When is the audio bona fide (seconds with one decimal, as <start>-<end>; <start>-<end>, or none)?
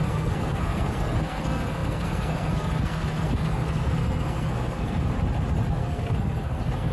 5.1-5.7